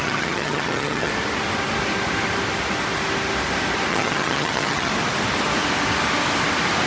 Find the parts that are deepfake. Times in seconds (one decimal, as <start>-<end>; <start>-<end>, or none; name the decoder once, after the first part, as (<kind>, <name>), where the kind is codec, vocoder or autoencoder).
0.0-1.1 (vocoder, HiFi-GAN); 3.9-4.9